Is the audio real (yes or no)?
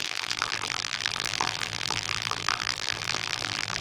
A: no